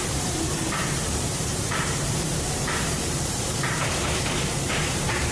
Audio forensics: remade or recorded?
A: remade